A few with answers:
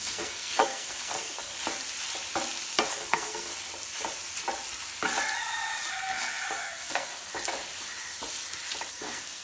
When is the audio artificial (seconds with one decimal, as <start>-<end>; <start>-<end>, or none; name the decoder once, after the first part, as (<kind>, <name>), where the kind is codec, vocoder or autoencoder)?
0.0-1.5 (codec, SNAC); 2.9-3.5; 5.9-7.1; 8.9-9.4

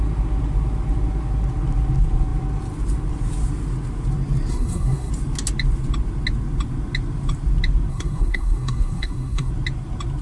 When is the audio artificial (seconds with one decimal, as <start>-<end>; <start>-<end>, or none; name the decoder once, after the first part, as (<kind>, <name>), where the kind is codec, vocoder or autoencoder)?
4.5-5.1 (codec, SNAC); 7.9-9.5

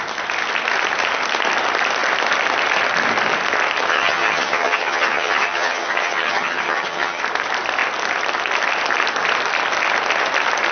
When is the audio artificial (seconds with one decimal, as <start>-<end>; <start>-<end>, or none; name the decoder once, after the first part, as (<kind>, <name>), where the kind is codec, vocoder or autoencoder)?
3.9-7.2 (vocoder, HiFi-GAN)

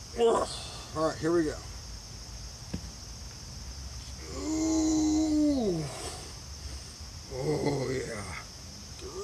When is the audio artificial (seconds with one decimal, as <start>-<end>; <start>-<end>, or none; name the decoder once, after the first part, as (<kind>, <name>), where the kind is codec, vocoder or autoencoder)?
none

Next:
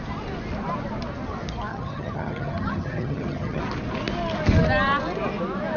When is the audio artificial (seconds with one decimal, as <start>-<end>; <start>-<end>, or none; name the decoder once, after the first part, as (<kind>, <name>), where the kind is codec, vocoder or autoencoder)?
1.7-3.6 (vocoder, HiFi-GAN)